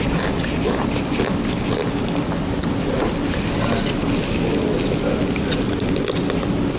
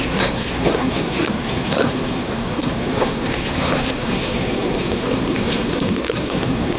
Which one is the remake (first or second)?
second